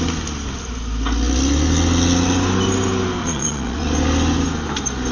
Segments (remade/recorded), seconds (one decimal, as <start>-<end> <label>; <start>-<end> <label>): 0.0-3.2 recorded; 3.2-3.8 remade; 3.8-5.1 recorded